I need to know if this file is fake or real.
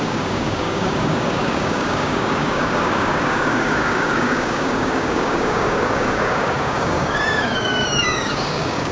fake